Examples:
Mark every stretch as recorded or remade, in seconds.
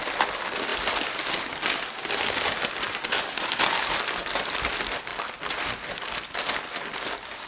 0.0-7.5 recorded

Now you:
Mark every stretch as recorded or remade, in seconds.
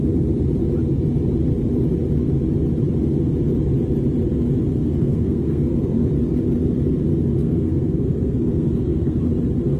0.0-4.7 recorded; 4.7-6.1 remade; 6.1-7.4 recorded; 7.4-9.2 remade; 9.2-9.8 recorded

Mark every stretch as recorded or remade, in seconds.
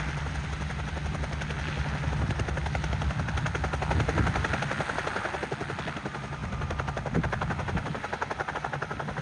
0.0-9.2 recorded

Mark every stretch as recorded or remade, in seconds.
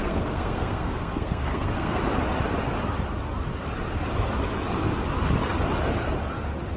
0.0-2.0 remade; 2.0-6.8 recorded